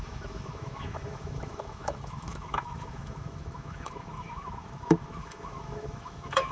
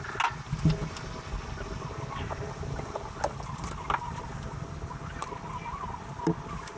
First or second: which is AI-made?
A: first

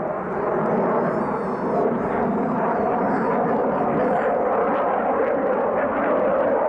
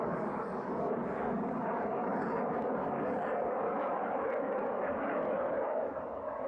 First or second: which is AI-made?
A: second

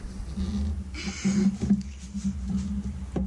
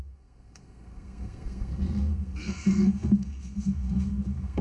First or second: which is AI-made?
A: second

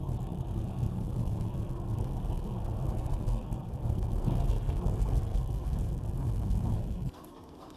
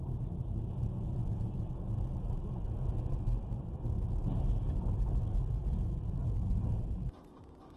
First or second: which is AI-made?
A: first